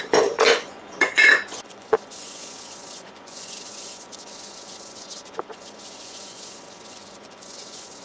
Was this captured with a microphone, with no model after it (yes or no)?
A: no